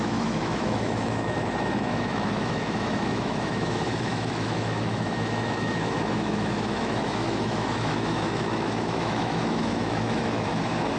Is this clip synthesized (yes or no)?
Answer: yes